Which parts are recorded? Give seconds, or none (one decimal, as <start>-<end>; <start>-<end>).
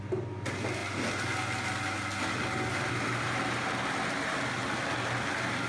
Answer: 0.0-5.7